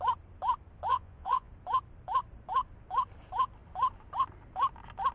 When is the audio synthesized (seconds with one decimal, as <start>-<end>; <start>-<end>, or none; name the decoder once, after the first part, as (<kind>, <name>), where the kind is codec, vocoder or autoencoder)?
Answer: 0.9-1.5 (vocoder, Vocos)